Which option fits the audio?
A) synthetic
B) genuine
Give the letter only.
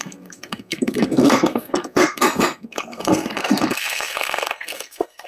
A